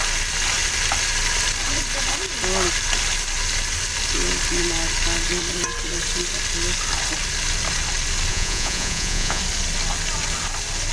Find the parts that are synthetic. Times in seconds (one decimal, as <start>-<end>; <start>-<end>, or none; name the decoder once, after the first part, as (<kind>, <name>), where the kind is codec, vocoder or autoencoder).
8.3-9.4 (vocoder, Vocos)